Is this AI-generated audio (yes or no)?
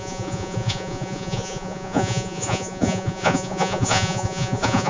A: yes